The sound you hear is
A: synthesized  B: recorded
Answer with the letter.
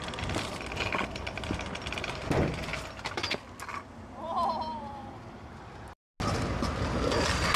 B